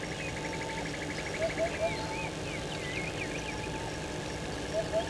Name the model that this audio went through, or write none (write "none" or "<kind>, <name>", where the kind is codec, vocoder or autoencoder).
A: none